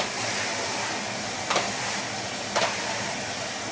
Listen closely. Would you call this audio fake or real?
real